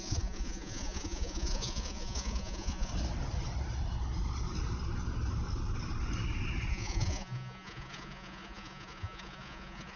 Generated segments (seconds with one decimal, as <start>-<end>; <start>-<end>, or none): 0.0-2.9; 6.7-10.0